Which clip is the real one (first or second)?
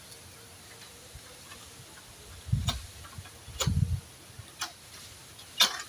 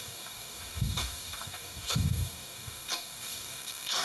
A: first